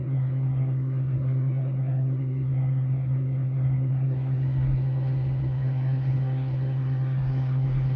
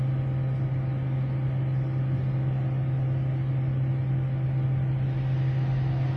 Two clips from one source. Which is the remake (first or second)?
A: first